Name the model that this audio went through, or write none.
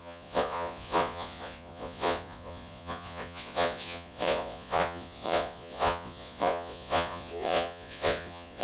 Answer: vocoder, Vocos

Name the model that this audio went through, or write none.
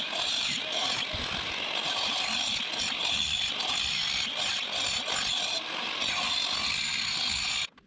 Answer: none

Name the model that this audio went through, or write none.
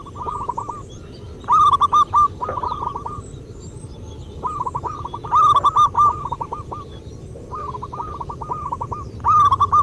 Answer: none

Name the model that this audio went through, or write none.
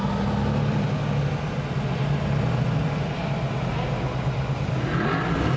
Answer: none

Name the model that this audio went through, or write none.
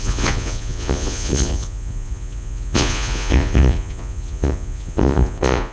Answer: vocoder, Vocos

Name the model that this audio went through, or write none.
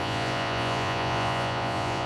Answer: vocoder, Vocos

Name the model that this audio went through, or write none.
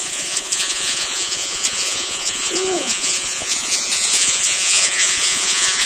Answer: vocoder, Vocos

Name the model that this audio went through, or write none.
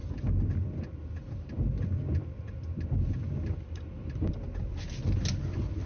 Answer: none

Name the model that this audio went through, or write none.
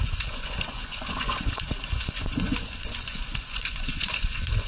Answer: vocoder, Vocos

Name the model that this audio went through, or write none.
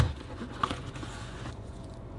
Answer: vocoder, Vocos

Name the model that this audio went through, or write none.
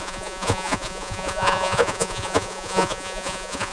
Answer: vocoder, Vocos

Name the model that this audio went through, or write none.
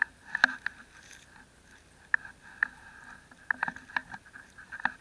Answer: none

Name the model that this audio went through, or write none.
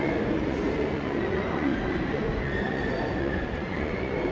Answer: vocoder, Vocos